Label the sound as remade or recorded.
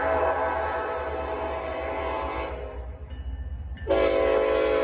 recorded